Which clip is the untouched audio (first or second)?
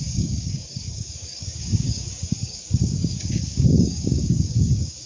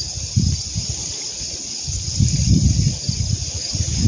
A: second